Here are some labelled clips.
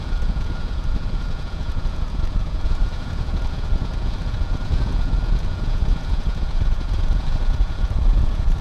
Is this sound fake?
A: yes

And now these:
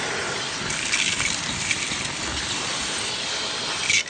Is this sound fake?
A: no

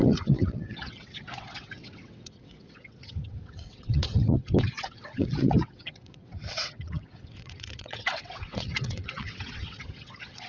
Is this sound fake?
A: yes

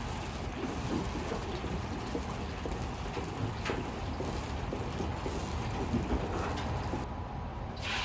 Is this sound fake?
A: no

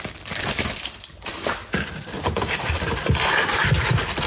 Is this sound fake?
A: yes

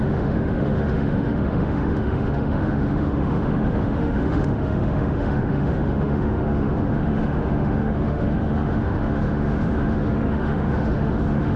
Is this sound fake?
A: yes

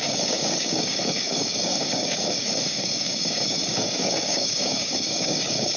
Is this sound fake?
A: yes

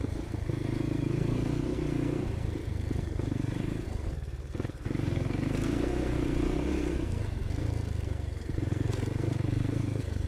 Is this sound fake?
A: yes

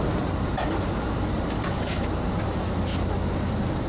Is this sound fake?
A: no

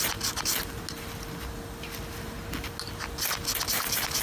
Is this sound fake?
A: no